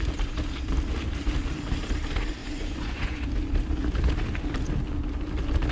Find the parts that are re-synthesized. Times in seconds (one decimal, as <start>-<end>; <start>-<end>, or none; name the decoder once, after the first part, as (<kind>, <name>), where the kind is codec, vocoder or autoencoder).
2.4-3.3 (vocoder, Vocos)